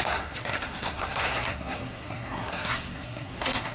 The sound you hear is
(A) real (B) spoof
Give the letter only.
B